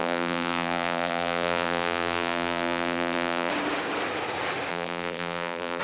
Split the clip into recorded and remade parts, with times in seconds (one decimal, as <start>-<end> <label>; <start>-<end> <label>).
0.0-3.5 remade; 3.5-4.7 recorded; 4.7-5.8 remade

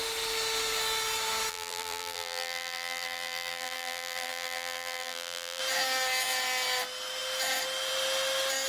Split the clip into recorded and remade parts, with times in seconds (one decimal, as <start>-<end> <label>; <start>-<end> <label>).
0.0-1.5 recorded; 1.5-5.6 remade; 5.6-8.7 recorded

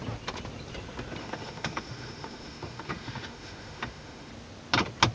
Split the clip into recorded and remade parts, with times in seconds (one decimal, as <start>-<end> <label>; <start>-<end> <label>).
0.0-1.2 recorded; 1.2-4.3 remade; 4.3-5.1 recorded